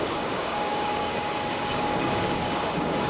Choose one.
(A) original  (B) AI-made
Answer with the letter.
B